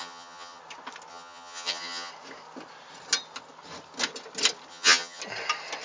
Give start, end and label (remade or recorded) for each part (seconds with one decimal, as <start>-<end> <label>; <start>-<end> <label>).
0.0-0.6 remade; 0.6-1.1 recorded; 1.1-2.1 remade; 2.1-4.7 recorded; 4.7-5.2 remade; 5.2-5.8 recorded